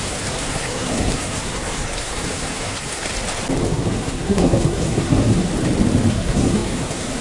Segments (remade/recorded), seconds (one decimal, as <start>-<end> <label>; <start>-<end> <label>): 0.0-3.1 remade; 3.1-3.7 recorded; 3.7-5.5 remade; 5.5-6.1 recorded; 6.1-7.2 remade